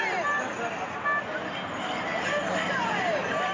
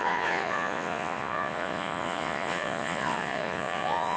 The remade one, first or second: second